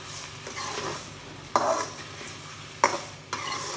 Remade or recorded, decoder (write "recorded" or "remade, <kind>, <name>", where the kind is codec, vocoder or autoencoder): recorded